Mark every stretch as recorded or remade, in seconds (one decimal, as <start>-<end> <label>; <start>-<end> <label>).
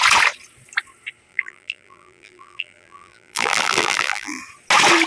0.0-1.3 recorded; 1.3-4.4 remade; 4.4-5.1 recorded